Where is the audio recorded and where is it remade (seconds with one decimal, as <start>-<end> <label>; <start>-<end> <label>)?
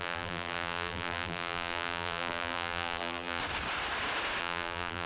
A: 0.0-3.4 remade; 3.4-4.4 recorded; 4.4-5.1 remade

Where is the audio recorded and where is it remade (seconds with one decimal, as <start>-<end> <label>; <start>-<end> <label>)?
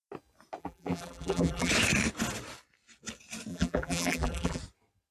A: 0.0-0.6 recorded; 0.6-1.7 remade; 1.7-3.5 recorded; 3.5-4.6 remade; 4.6-5.1 recorded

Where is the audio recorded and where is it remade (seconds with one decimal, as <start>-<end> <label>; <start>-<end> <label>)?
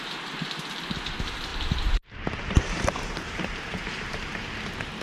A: 0.0-1.5 recorded; 1.5-4.5 remade; 4.5-5.0 recorded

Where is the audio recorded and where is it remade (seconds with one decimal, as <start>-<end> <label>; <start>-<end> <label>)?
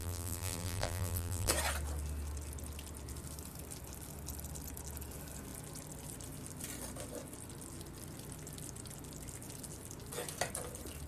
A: 0.0-1.5 remade; 1.5-11.1 recorded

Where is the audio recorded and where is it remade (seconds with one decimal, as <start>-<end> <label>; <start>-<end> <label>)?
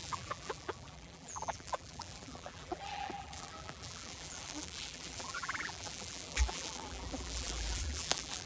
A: 0.0-8.5 remade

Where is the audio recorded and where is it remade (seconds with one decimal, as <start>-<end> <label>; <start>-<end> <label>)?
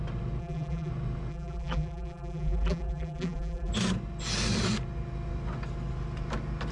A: 0.0-0.4 recorded; 0.4-0.9 remade; 0.9-1.3 recorded; 1.3-3.7 remade; 3.7-6.7 recorded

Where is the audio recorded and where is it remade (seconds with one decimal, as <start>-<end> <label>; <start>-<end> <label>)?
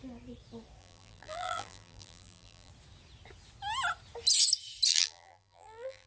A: 0.0-0.8 recorded; 0.8-2.7 remade; 2.7-4.9 recorded; 4.9-6.1 remade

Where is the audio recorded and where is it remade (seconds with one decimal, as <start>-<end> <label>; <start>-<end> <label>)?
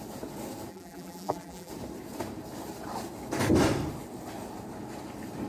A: 0.0-0.7 recorded; 0.7-1.7 remade; 1.7-5.5 recorded